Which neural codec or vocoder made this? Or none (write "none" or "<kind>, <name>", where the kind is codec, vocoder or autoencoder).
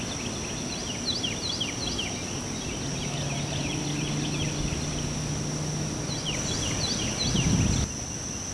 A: none